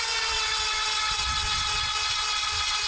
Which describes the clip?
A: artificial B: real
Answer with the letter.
A